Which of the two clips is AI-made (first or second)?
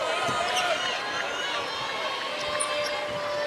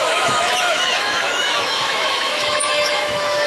second